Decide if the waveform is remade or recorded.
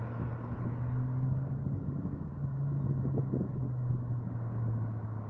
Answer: recorded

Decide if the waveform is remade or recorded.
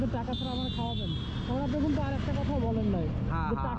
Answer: recorded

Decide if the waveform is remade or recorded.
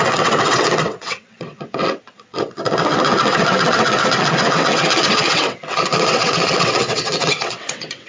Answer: remade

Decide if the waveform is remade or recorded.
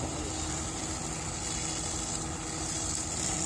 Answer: recorded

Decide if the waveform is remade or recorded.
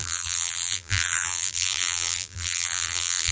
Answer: remade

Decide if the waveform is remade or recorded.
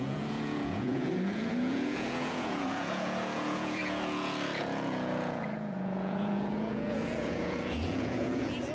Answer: remade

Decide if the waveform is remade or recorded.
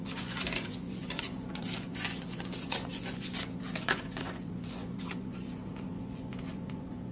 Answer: remade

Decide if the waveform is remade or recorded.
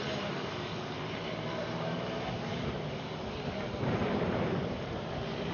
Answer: remade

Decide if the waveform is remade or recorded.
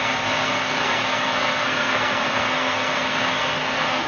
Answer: remade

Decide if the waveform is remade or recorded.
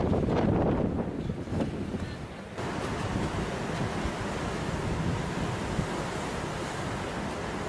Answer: recorded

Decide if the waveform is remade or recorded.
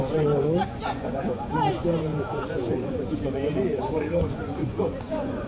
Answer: remade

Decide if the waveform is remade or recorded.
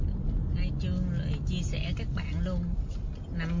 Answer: recorded